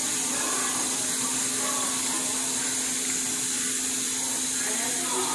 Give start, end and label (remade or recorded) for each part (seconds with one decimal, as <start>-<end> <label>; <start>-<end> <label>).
0.0-5.3 recorded